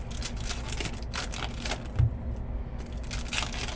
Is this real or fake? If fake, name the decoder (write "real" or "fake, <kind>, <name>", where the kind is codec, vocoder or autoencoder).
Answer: real